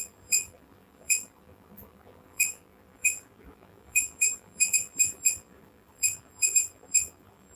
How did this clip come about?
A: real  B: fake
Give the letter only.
B